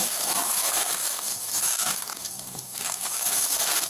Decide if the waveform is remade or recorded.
remade